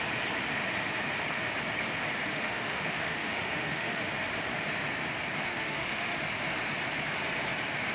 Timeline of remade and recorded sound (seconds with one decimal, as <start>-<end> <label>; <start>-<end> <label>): 0.0-2.3 recorded; 2.3-4.1 remade; 4.1-5.5 recorded; 5.5-6.2 remade; 6.2-7.9 recorded